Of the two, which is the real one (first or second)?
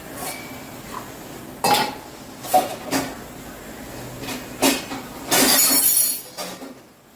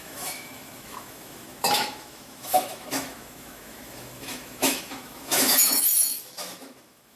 first